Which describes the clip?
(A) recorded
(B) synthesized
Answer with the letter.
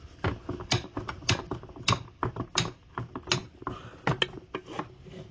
A